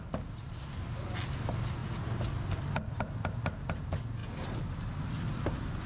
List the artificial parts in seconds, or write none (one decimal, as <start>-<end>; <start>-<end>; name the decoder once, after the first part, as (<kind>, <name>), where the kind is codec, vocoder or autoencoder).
none